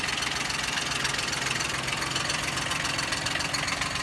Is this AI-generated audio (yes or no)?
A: no